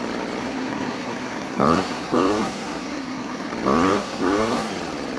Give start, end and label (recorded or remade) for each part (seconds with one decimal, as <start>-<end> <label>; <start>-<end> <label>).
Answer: 0.0-0.4 recorded; 0.4-3.5 remade; 3.5-3.9 recorded; 3.9-4.7 remade; 4.7-5.2 recorded